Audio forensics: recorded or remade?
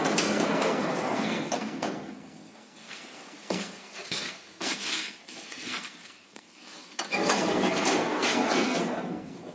remade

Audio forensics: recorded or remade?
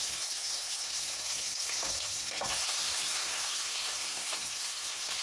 remade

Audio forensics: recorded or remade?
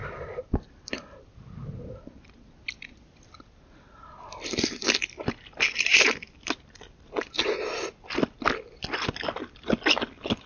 recorded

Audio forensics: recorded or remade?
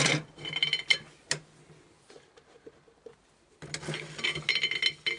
recorded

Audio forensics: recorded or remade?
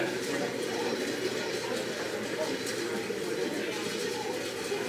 recorded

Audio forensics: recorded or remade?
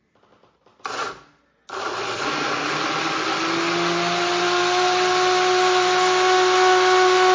recorded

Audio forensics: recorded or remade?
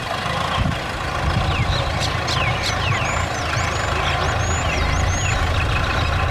recorded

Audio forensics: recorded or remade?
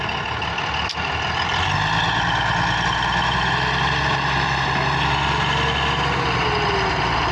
recorded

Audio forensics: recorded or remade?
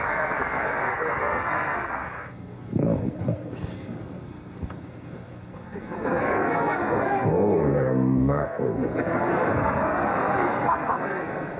remade